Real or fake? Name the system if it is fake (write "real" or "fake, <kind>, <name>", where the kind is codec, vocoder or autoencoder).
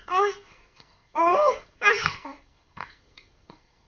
fake, codec, SNAC